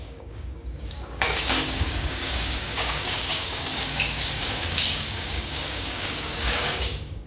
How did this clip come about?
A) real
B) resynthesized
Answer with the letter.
B